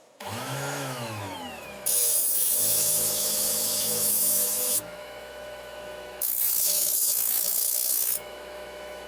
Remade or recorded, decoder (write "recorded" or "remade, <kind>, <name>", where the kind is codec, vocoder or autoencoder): remade, autoencoder, DAC-VAE